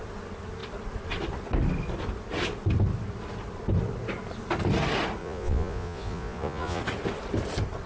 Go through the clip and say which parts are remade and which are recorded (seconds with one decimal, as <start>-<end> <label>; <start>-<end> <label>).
0.0-5.2 recorded; 5.2-6.8 remade; 6.8-7.9 recorded

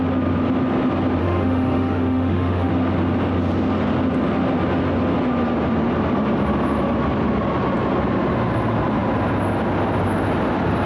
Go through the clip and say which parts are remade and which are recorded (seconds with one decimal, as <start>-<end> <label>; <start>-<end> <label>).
0.0-1.2 recorded; 1.2-2.7 remade; 2.7-10.9 recorded